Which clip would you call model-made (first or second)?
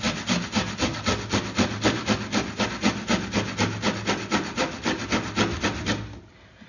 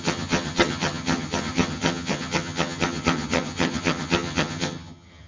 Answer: second